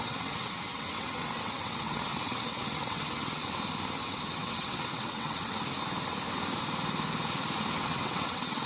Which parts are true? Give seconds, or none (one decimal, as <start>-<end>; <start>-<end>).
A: 3.4-4.0; 5.5-7.8

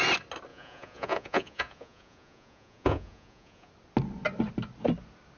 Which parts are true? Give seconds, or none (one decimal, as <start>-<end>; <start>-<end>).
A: 0.0-0.5; 3.7-5.4

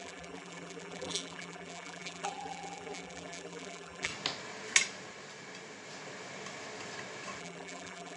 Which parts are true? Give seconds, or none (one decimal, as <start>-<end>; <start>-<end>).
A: 4.1-7.4

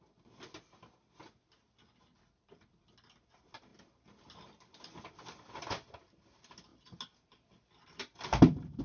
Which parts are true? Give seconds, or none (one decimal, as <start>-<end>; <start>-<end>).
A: 0.0-8.8

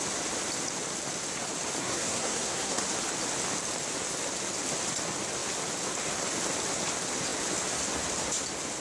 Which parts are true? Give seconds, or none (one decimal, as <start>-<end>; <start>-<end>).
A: 0.0-1.8; 2.8-8.8

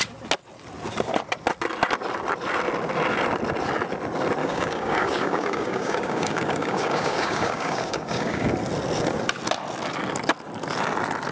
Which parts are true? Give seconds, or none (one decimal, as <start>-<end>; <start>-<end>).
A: 0.0-4.4; 8.5-11.3

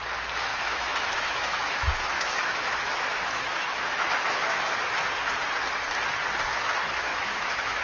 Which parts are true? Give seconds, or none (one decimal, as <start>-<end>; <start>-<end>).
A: 0.0-0.5; 4.8-7.1

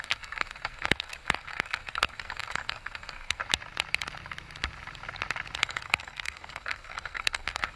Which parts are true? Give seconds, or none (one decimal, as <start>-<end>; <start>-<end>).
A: 3.4-5.6